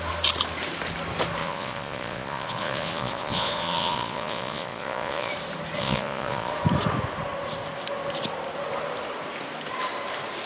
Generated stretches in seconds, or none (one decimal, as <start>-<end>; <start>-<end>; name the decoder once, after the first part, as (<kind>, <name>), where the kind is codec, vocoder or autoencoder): 1.4-5.3 (vocoder, Vocos); 5.8-6.5